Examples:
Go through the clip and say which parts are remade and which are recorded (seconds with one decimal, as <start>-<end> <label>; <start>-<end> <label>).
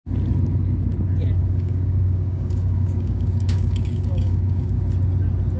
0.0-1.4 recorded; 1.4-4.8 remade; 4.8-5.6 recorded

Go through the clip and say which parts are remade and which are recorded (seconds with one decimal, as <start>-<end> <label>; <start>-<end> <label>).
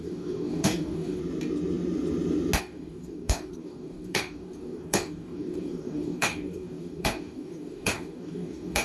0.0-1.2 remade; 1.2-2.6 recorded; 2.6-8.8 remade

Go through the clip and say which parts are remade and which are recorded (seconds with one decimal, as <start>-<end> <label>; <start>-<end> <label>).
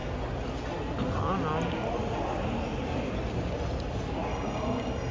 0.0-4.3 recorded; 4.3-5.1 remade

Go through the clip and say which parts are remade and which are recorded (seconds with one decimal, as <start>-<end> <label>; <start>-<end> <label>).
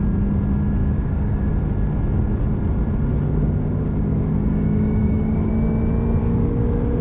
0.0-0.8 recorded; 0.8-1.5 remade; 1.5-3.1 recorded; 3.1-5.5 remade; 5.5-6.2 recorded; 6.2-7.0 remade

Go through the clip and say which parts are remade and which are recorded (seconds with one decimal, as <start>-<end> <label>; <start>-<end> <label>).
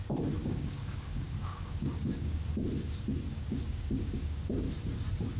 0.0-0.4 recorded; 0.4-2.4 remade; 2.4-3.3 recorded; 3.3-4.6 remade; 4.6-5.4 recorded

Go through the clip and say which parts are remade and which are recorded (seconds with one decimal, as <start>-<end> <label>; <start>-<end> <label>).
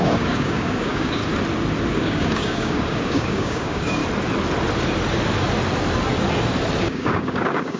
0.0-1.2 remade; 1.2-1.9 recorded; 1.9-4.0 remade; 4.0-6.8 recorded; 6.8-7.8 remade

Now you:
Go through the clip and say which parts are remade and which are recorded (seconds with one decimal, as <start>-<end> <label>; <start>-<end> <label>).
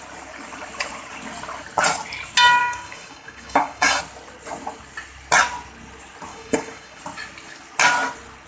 0.0-2.6 recorded; 2.6-4.0 remade; 4.0-6.3 recorded; 6.3-7.0 remade; 7.0-8.5 recorded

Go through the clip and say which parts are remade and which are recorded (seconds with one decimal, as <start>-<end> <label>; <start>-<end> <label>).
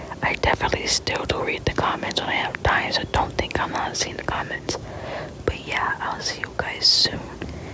0.0-1.7 recorded; 1.7-2.4 remade; 2.4-3.9 recorded; 3.9-4.9 remade; 4.9-7.7 recorded